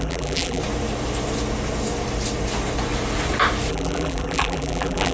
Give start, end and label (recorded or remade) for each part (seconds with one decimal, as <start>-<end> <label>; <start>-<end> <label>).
0.0-0.6 remade; 0.6-3.7 recorded; 3.7-5.1 remade